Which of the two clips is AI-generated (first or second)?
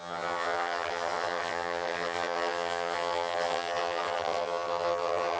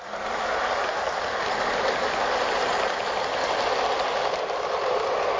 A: first